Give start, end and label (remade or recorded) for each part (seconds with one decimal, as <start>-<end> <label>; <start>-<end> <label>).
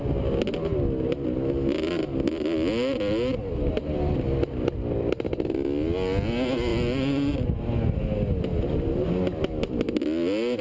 0.0-10.6 recorded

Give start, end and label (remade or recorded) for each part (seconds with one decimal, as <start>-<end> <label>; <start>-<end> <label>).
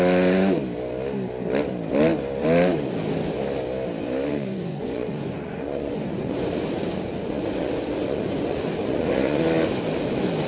0.0-4.3 recorded; 4.3-9.4 remade; 9.4-10.5 recorded